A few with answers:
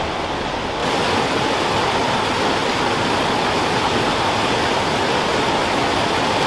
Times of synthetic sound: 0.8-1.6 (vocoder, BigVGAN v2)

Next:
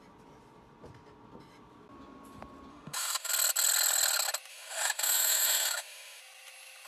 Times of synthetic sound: 2.7-3.3 (autoencoder, DAC-VAE); 4.5-6.2